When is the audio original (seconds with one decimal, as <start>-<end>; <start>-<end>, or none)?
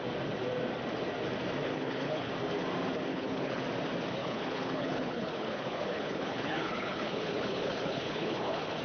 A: 0.0-1.7; 2.3-3.1; 3.6-4.2